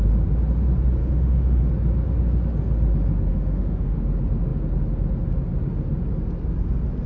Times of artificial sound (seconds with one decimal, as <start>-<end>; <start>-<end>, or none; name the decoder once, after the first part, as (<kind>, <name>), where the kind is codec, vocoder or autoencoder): 1.0-1.7 (autoencoder, DAC-VAE); 3.3-4.0